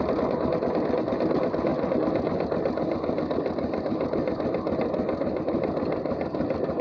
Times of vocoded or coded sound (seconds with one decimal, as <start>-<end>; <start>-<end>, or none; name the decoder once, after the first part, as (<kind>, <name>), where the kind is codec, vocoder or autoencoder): none